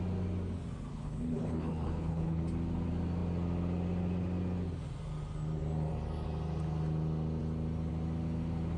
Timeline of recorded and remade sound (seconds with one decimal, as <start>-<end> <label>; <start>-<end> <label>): 0.0-0.9 recorded; 0.9-2.4 remade; 2.4-8.8 recorded